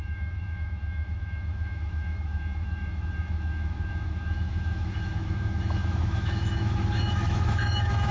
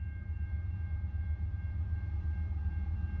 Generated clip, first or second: first